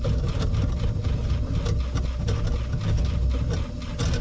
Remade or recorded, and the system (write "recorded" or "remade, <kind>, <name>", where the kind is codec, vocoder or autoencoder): recorded